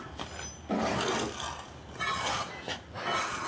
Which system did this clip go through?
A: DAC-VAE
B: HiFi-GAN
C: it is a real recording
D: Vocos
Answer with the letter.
C